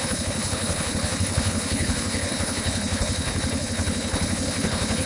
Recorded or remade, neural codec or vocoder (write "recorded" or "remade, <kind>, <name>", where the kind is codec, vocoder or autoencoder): remade, codec, HILCodec